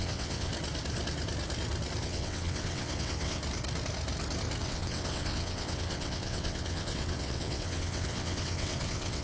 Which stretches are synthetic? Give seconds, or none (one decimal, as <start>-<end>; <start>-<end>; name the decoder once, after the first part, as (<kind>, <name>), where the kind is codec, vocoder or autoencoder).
0.0-0.5 (vocoder, WaveNeXt); 2.0-3.4; 4.6-9.2